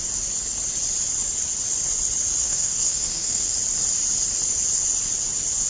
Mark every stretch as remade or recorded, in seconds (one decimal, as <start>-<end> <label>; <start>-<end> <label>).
0.0-2.4 recorded; 2.4-3.5 remade; 3.5-5.7 recorded

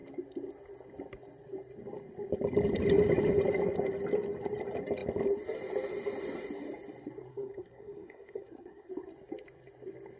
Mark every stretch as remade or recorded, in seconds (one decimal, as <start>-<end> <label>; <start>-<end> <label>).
0.0-7.3 recorded; 7.3-8.9 remade; 8.9-10.2 recorded

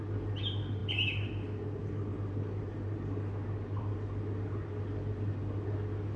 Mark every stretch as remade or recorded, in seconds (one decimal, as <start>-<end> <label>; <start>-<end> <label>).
0.0-6.2 recorded

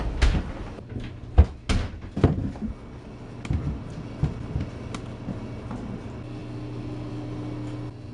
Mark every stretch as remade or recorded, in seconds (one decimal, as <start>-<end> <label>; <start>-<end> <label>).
0.0-8.1 recorded

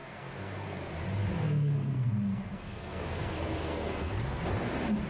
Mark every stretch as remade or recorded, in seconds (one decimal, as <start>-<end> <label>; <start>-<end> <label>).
0.0-0.9 remade; 0.9-1.3 recorded; 1.3-4.4 remade; 4.4-5.1 recorded

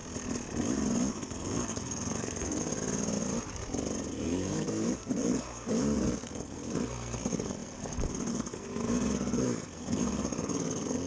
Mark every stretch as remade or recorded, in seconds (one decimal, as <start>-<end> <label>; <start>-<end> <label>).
0.0-1.1 recorded; 1.1-2.7 remade; 2.7-4.1 recorded; 4.1-11.1 remade

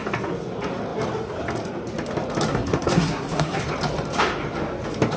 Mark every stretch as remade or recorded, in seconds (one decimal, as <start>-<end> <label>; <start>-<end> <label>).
0.0-2.5 recorded; 2.5-3.6 remade; 3.6-5.2 recorded

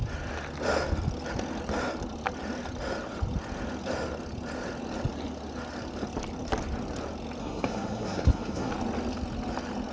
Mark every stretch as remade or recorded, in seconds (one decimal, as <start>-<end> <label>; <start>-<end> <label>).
0.0-7.4 recorded; 7.4-8.7 remade; 8.7-9.9 recorded